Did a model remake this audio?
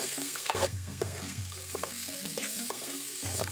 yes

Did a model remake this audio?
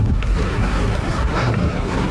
yes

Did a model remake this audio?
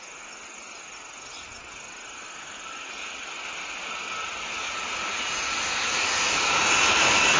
no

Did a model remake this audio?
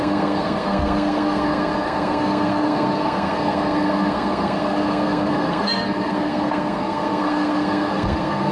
yes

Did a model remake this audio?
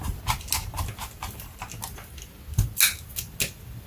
no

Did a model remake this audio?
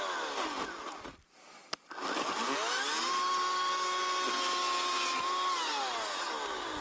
no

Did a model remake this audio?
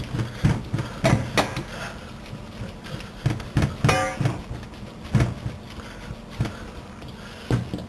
no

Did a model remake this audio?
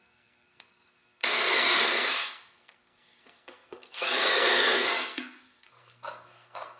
yes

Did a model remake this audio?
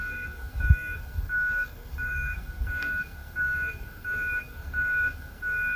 yes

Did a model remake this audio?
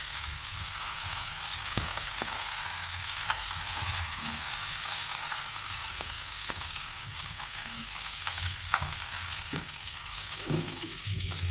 yes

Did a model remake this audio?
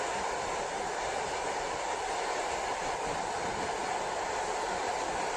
no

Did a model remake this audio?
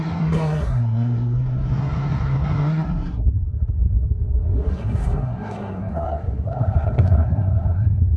yes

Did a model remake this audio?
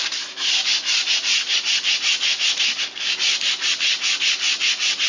no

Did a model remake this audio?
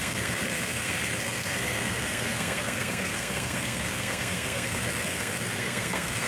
yes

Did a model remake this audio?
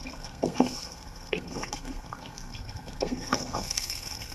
yes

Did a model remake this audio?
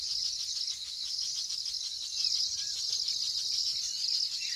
no